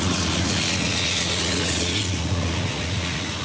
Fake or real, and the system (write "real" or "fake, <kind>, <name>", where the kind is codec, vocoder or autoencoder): fake, vocoder, Vocos